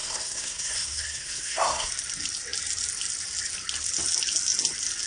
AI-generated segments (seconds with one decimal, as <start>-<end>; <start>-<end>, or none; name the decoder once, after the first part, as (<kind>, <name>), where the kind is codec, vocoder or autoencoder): 0.0-1.9 (codec, SNAC)